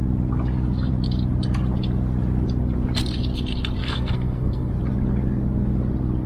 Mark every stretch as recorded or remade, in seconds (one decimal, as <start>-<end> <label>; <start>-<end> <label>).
0.0-3.8 recorded; 3.8-4.7 remade; 4.7-6.3 recorded